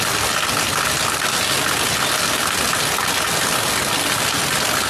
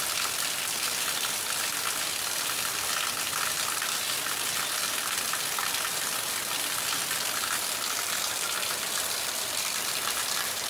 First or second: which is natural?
first